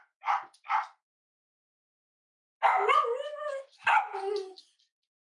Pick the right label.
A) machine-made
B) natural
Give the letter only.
B